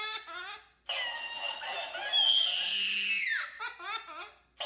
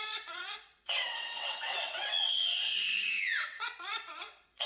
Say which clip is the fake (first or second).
second